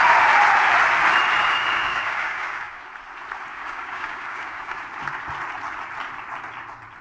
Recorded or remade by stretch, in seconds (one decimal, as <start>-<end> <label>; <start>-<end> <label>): 0.0-1.4 recorded; 1.4-2.9 remade; 2.9-3.5 recorded; 3.5-4.8 remade; 4.8-7.0 recorded